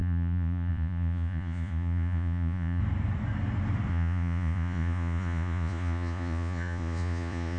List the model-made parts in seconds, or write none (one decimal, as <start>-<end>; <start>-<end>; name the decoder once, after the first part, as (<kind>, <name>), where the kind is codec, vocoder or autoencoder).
0.0-2.8 (vocoder, Vocos); 3.9-7.6